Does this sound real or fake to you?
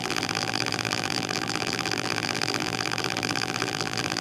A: fake